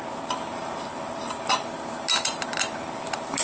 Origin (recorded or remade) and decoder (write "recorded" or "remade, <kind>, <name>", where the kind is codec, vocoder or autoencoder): recorded